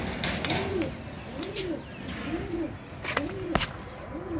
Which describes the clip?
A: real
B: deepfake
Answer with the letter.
A